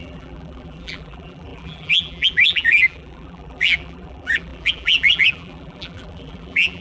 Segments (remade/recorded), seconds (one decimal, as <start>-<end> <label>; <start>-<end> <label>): 0.0-6.8 remade